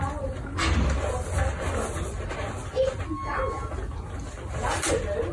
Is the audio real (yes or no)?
yes